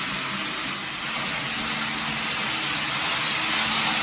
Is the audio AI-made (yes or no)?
no